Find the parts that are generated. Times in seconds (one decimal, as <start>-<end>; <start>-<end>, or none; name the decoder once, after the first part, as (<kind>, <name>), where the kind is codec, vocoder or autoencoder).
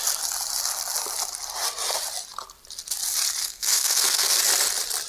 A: 3.4-4.3 (codec, SNAC)